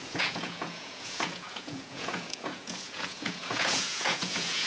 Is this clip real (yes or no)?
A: no